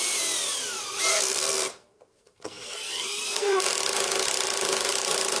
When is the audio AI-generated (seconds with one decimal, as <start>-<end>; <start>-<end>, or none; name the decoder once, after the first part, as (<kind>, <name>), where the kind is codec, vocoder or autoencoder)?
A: 1.1-3.6 (codec, SNAC)